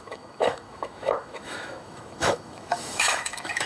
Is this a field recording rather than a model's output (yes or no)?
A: no